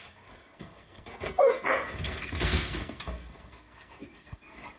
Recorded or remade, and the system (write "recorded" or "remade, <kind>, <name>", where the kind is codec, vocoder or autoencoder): remade, codec, SNAC